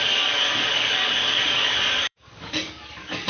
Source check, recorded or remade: remade